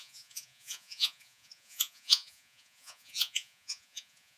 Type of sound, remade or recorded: remade